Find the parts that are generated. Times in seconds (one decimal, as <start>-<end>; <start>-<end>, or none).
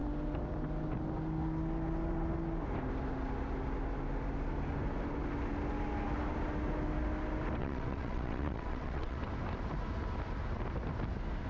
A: 7.6-9.2